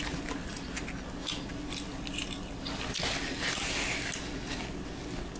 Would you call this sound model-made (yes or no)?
no